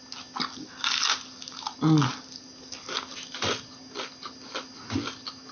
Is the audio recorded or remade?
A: recorded